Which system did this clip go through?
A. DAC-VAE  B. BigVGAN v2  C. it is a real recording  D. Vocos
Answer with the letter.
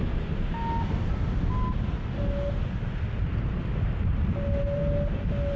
C